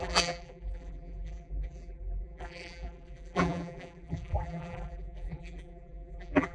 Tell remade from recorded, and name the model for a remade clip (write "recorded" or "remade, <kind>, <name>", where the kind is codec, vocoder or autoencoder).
remade, vocoder, BigVGAN v2